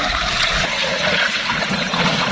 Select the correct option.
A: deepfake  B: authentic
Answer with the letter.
A